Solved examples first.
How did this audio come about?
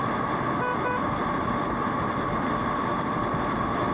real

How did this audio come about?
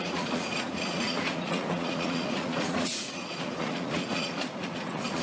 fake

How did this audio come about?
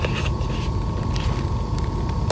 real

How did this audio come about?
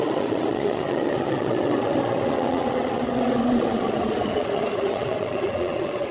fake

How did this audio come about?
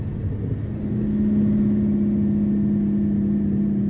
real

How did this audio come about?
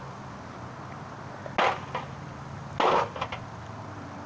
real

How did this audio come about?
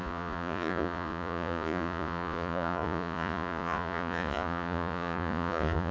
fake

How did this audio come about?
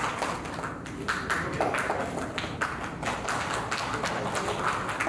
real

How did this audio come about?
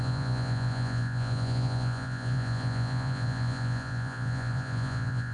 fake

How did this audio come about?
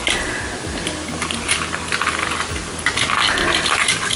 real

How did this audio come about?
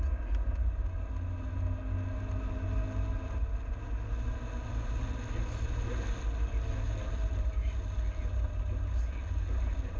real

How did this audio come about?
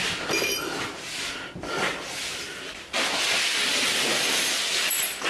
real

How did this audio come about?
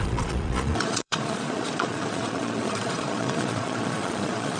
fake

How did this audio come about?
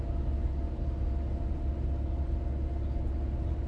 real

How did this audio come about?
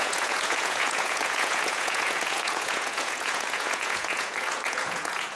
fake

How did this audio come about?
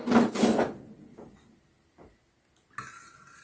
real